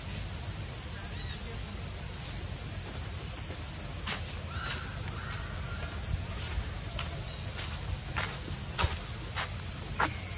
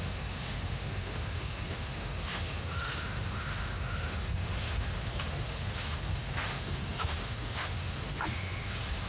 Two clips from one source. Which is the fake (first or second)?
second